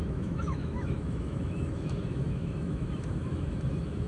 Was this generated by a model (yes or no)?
yes